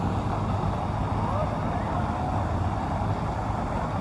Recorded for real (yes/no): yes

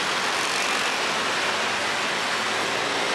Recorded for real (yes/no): yes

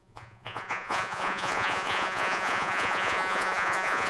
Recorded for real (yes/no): no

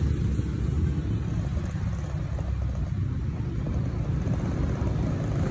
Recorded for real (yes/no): yes